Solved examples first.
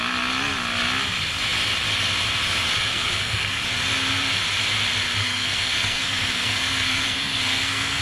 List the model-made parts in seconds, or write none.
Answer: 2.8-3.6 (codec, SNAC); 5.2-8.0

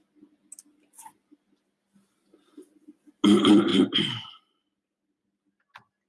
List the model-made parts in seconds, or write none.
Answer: none